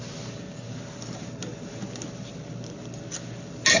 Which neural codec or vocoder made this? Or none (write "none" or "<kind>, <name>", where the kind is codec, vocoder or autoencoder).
none